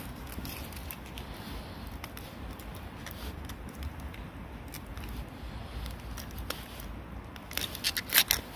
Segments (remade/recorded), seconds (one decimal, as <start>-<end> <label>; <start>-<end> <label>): 0.0-8.6 recorded